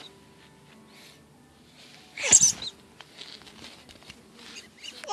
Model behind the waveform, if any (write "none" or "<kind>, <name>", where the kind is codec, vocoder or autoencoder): none